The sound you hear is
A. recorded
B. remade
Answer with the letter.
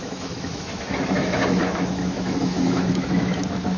B